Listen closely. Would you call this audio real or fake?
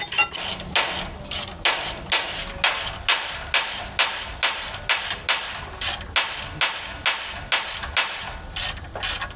real